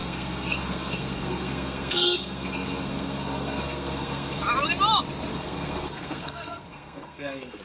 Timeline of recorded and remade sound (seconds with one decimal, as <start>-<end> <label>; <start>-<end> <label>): 0.0-4.4 remade; 4.4-5.3 recorded; 5.3-7.6 remade